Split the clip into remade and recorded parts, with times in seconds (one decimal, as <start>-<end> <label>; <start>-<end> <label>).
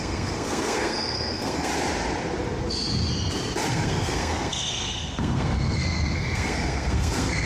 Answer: 0.0-1.7 remade; 1.7-3.7 recorded; 3.7-7.5 remade